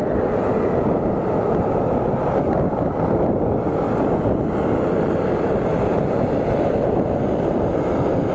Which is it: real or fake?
real